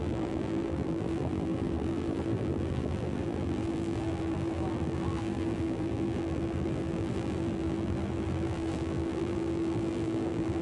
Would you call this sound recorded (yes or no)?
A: no